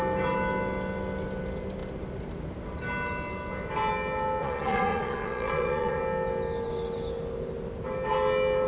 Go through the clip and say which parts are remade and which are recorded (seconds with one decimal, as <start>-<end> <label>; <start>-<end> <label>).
0.0-4.4 recorded; 4.4-6.0 remade; 6.0-8.7 recorded